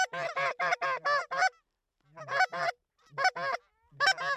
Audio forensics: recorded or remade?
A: recorded